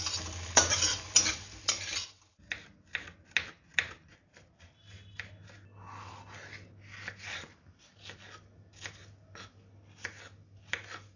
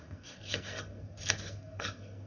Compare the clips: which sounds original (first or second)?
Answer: first